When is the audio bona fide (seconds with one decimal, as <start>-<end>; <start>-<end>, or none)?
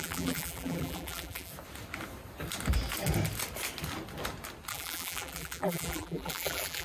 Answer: 1.5-4.7